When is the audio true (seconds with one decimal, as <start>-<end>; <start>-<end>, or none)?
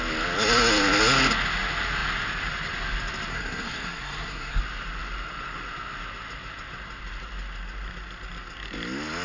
0.0-3.3; 4.6-9.2